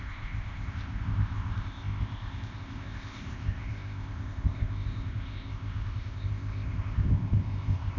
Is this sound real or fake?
fake